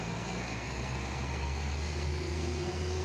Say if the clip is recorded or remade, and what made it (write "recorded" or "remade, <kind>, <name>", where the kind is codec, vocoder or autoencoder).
remade, codec, SNAC